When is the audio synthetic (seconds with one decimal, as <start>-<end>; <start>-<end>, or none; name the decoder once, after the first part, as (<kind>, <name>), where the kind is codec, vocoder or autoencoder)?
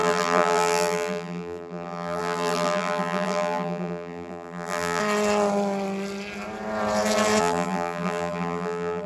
0.0-5.0 (vocoder, BigVGAN v2); 7.4-9.1